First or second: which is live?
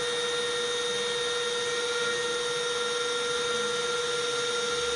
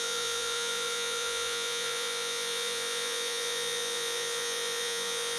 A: first